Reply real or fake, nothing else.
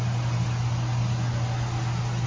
real